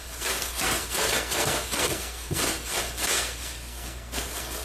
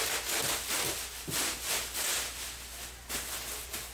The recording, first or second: second